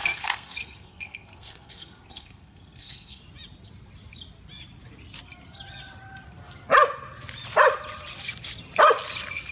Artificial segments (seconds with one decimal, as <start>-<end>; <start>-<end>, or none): 0.0-3.2